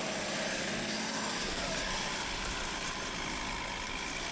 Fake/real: real